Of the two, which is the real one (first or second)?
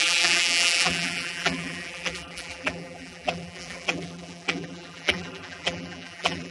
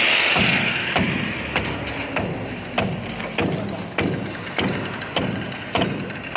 second